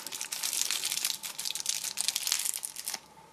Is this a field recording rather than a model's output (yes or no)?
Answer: yes